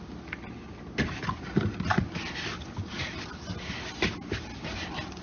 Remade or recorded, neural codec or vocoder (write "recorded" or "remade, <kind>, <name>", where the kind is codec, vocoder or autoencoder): recorded